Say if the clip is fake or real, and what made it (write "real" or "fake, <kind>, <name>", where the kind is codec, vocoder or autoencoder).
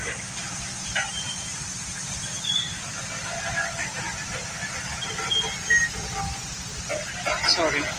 real